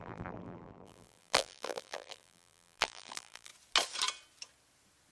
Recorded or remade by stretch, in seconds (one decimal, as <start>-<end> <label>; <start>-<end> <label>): 0.0-3.5 remade; 3.5-5.1 recorded